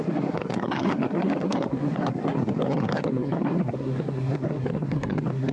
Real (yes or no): no